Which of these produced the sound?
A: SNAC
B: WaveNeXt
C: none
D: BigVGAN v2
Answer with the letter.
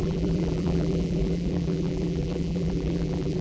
D